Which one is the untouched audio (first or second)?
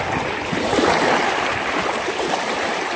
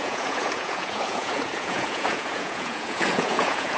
first